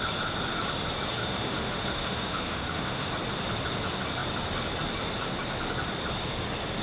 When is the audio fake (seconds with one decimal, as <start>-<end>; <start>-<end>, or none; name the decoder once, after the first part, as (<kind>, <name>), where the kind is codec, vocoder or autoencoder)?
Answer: 1.2-3.1 (autoencoder, DAC-VAE)